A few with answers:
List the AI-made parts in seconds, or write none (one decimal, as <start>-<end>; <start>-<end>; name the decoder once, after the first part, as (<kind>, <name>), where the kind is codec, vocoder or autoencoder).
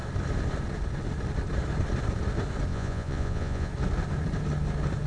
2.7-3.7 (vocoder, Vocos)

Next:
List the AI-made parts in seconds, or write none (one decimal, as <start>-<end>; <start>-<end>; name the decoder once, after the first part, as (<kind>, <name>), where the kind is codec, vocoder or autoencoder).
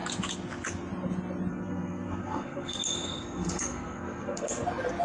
1.5-4.5 (codec, SNAC)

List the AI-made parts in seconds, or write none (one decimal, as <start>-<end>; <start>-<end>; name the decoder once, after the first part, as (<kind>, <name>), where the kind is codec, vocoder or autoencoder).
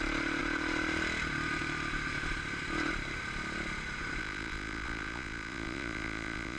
4.2-6.6 (vocoder, Vocos)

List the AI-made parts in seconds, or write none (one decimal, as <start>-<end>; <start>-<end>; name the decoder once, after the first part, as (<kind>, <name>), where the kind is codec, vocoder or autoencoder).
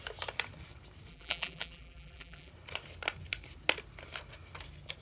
1.1-2.5 (vocoder, BigVGAN v2)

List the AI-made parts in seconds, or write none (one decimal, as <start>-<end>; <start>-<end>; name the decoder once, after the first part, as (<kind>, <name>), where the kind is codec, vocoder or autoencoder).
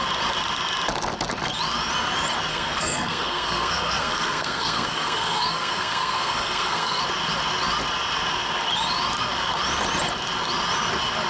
2.5-7.0 (codec, SNAC)